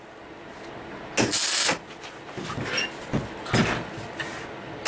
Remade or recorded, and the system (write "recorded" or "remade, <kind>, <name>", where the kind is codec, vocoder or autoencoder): recorded